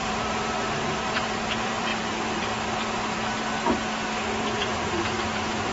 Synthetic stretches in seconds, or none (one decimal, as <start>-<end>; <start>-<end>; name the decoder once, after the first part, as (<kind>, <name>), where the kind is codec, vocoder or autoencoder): 0.0-1.9 (vocoder, BigVGAN v2); 4.6-5.7